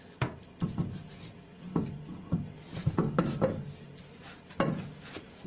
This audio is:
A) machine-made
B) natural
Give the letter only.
B